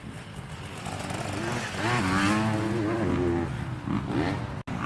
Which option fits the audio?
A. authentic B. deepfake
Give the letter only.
A